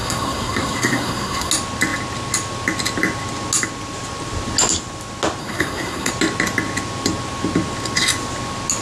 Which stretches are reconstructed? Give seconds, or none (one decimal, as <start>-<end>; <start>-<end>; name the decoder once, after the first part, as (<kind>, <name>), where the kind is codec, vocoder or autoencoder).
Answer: 0.0-1.5 (codec, SNAC); 5.4-6.1